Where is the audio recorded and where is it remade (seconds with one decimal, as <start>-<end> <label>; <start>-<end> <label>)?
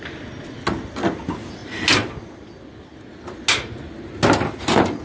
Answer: 0.0-5.0 recorded